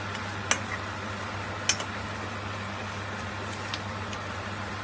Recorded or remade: recorded